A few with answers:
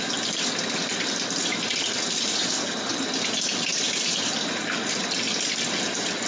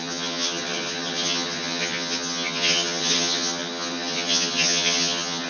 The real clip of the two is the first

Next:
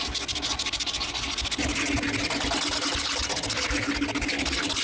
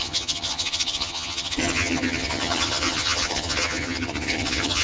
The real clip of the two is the first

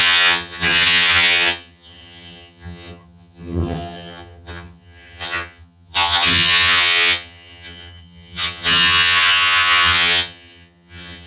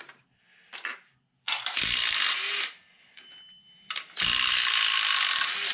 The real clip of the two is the second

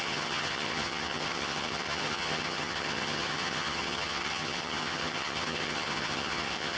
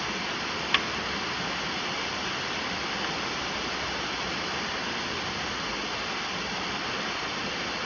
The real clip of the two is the second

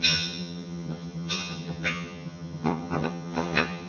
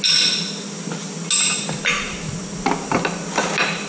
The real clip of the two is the second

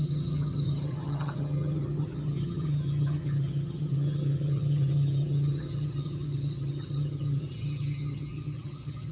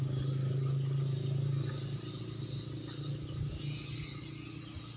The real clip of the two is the second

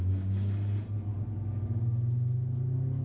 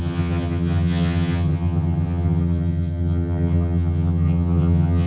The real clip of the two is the first